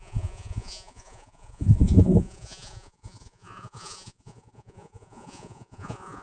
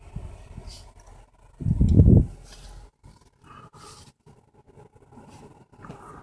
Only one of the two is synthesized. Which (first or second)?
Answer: first